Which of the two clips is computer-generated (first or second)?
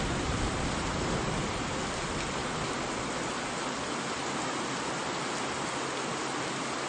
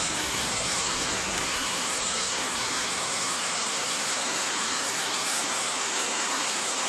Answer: second